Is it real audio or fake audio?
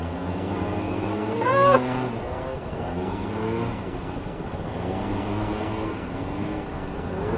fake